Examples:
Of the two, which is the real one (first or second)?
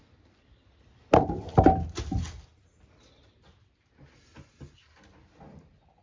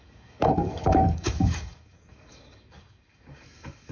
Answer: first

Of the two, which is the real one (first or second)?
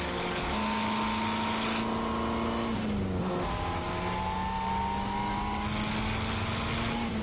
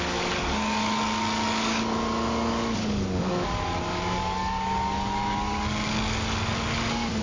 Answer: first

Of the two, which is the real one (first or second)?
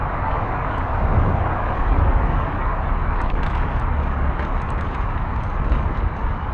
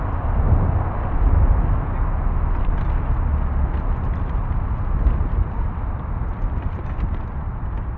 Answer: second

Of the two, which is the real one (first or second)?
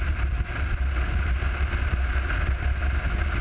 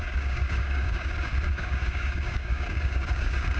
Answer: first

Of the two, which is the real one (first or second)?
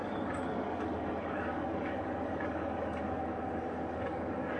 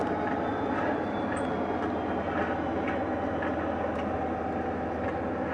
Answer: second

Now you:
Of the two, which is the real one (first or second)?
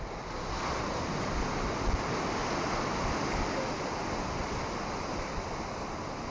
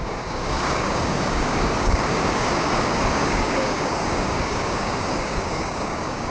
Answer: first